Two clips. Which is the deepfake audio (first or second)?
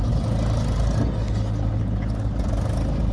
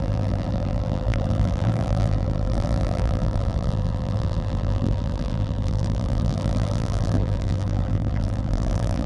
second